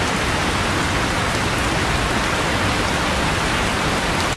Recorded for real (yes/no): yes